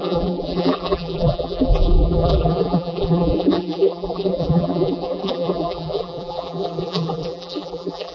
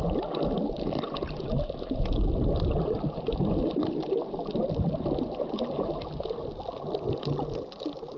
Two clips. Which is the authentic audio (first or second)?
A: second